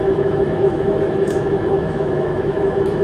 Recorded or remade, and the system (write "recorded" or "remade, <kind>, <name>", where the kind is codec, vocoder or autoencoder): remade, autoencoder, DAC-VAE